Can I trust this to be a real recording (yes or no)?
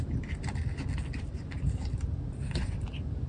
yes